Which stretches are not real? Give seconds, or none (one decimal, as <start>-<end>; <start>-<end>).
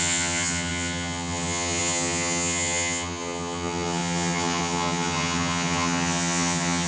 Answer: 0.0-6.9